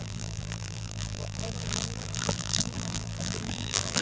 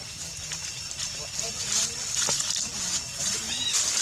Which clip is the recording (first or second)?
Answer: second